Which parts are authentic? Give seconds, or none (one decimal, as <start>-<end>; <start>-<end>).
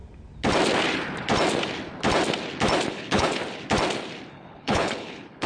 0.0-2.9; 3.4-4.3